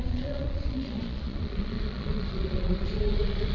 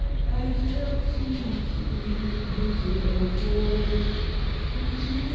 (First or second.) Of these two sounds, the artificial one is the first